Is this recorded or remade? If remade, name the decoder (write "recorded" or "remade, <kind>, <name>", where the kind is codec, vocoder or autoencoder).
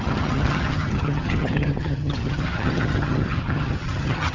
remade, vocoder, HiFi-GAN